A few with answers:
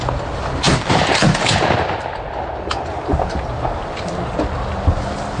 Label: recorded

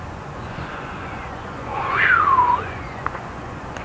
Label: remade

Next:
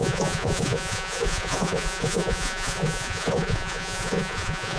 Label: remade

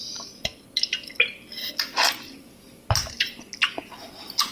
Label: recorded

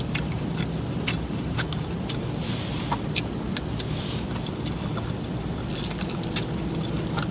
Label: recorded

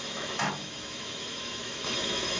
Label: remade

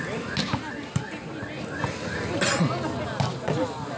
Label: recorded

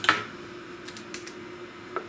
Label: recorded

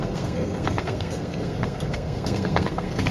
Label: remade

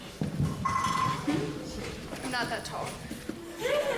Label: recorded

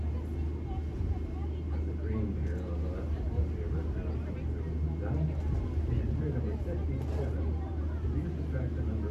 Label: recorded